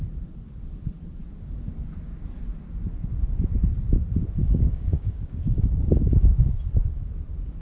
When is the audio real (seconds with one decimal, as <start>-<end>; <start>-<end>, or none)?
0.0-4.4; 6.5-7.6